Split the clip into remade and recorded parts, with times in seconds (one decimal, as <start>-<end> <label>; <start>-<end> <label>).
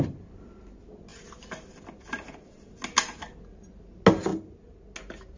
0.0-5.4 recorded